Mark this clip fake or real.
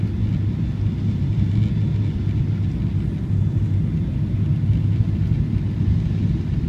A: real